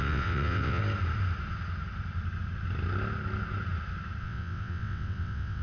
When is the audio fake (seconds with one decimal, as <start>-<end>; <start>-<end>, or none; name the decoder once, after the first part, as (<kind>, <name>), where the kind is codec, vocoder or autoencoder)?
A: 0.0-0.8 (vocoder, WaveNeXt); 4.2-5.6